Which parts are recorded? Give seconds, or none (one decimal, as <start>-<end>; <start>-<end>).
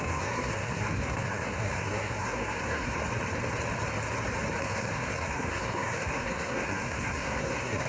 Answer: 3.0-4.6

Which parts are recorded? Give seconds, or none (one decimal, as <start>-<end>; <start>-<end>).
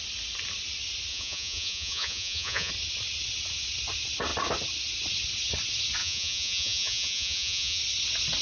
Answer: 0.0-1.1; 2.7-6.0; 7.8-8.4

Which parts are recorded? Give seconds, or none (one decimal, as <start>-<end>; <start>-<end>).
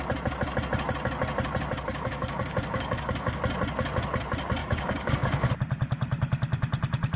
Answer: 0.0-1.9; 3.4-4.6; 5.5-7.2